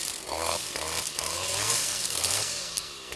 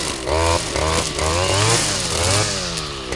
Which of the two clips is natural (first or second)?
second